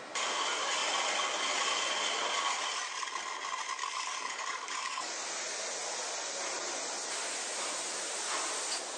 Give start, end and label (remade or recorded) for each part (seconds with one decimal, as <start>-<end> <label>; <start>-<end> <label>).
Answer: 0.0-3.8 recorded; 3.8-5.1 remade; 5.1-9.0 recorded